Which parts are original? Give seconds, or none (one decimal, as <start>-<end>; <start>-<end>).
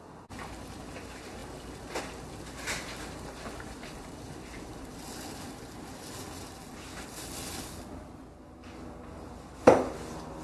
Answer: 0.0-10.4